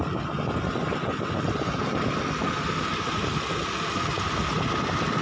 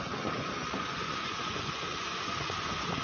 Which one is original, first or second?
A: first